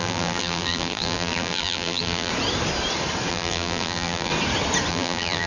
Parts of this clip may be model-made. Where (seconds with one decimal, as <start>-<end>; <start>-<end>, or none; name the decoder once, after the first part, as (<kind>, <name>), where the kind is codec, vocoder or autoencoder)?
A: 0.0-2.3 (vocoder, BigVGAN v2); 3.3-4.3; 4.9-5.5